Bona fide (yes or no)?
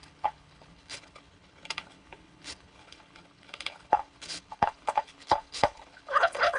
no